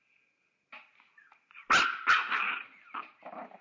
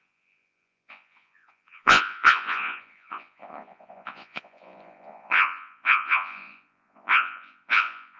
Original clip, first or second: first